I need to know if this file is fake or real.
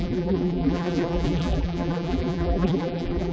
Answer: fake